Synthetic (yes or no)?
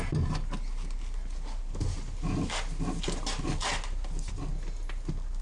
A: no